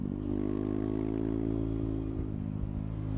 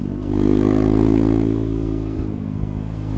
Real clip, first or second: first